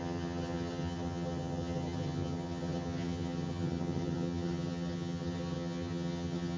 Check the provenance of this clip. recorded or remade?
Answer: remade